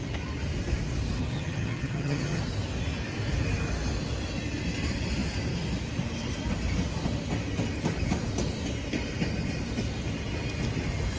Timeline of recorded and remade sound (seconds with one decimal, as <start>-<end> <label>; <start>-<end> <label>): 0.0-1.3 recorded; 1.3-2.4 remade; 2.4-11.2 recorded